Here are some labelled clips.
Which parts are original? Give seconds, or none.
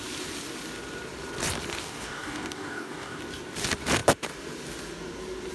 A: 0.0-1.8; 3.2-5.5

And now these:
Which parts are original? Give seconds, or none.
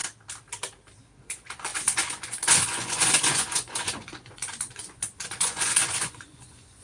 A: 0.0-1.2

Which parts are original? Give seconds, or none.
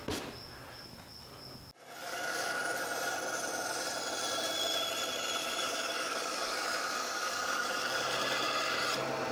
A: 0.0-2.0; 2.6-5.4; 8.0-9.3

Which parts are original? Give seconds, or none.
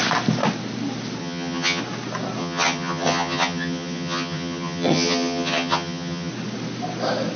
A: 0.0-1.2; 1.8-2.4; 6.3-7.4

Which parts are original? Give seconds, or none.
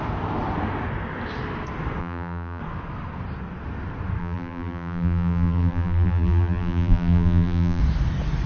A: 0.0-2.0; 2.6-4.2; 7.8-8.5